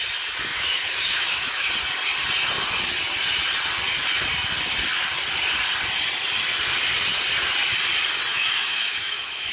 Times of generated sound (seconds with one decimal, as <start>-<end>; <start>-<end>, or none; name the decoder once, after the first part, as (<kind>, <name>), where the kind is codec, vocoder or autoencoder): 0.5-1.7 (autoencoder, DAC-VAE); 8.3-9.5